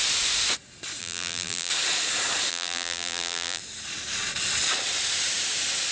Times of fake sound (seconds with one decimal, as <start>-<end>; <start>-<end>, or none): 1.0-1.7; 2.5-3.6